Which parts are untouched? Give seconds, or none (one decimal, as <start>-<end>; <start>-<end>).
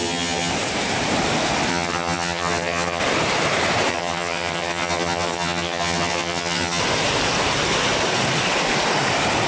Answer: 0.5-1.7; 3.0-3.9; 6.8-9.5